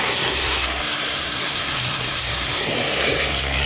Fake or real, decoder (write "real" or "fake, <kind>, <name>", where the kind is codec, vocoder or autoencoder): fake, codec, SNAC